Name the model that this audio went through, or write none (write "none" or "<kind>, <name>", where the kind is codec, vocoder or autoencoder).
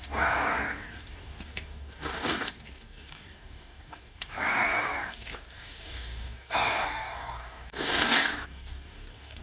codec, DAC